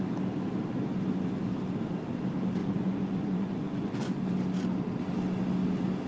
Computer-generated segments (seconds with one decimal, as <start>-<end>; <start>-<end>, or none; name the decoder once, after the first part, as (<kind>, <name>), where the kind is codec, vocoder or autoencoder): 2.6-4.2 (vocoder, Vocos)